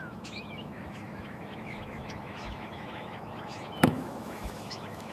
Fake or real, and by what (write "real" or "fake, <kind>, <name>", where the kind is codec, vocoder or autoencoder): fake, autoencoder, DAC-VAE